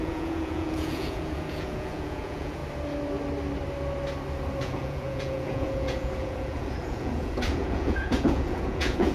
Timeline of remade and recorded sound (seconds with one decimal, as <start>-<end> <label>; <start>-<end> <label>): 0.0-2.6 remade; 2.6-4.6 recorded; 4.6-9.1 remade

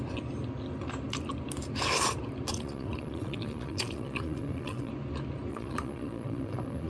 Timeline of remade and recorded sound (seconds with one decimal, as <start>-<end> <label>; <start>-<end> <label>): 0.0-2.5 recorded; 2.5-4.9 remade; 4.9-5.5 recorded; 5.5-6.9 remade

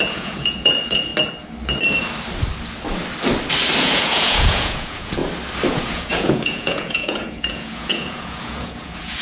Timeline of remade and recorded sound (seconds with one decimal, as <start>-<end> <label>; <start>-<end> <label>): 0.0-1.1 remade; 1.1-3.8 recorded; 3.8-5.2 remade; 5.2-5.7 recorded; 5.7-9.2 remade

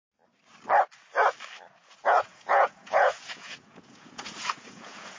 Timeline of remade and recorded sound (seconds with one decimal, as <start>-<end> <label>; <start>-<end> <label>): 0.0-2.0 recorded; 2.0-5.2 remade